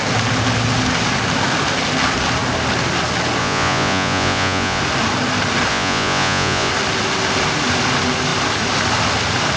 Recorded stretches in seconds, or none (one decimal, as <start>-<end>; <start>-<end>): 0.0-3.4; 4.8-5.7; 6.7-9.6